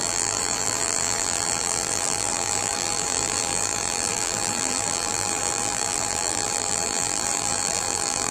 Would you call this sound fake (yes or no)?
yes